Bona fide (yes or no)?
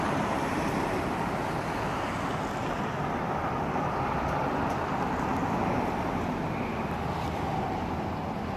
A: yes